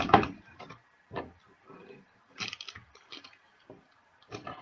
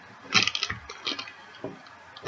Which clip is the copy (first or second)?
first